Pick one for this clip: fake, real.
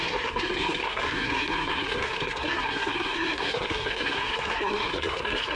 fake